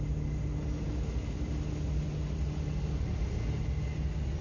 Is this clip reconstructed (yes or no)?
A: no